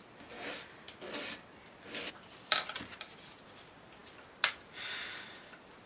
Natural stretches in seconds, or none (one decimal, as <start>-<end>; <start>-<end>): 4.0-4.7